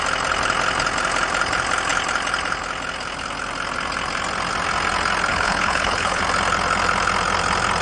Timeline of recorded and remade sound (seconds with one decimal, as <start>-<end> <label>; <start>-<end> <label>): 0.0-5.3 recorded; 5.3-6.2 remade; 6.2-7.8 recorded